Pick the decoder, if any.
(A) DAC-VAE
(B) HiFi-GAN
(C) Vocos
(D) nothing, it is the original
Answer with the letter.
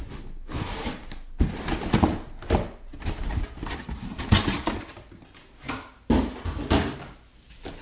D